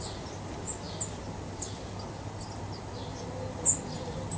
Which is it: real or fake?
real